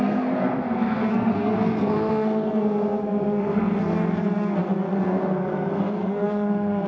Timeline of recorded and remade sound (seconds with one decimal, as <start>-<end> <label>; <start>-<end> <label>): 0.0-6.9 remade